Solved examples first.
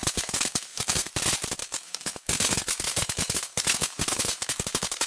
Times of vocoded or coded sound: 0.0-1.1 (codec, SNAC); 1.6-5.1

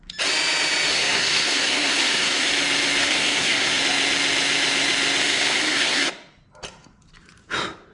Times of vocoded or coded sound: 0.9-2.5 (codec, SNAC); 3.0-3.8; 5.2-6.1

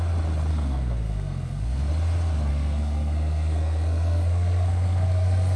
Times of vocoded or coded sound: 0.5-1.9 (codec, SNAC); 2.5-5.6

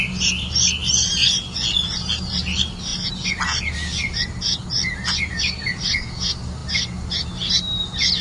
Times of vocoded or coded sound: 0.8-1.5 (vocoder, BigVGAN v2)